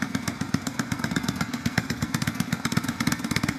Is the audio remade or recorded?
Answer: remade